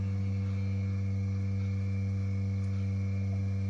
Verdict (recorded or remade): recorded